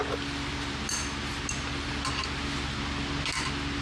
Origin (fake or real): real